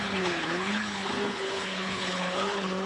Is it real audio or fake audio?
fake